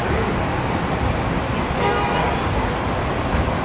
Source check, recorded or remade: recorded